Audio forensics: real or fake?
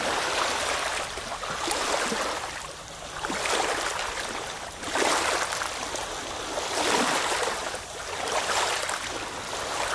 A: fake